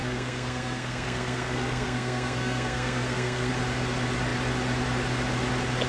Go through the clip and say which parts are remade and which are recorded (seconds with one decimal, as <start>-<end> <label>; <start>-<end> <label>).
0.0-3.5 remade; 3.5-5.9 recorded